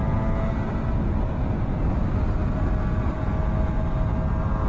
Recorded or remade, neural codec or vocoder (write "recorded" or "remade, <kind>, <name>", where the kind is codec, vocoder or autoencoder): recorded